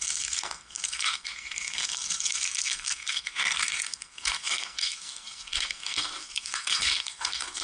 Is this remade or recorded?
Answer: remade